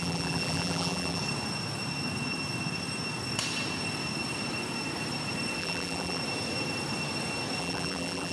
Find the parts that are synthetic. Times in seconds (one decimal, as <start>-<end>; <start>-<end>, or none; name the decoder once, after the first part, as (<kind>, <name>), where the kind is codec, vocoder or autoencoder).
0.0-1.2 (vocoder, BigVGAN v2); 5.6-6.2; 7.6-8.3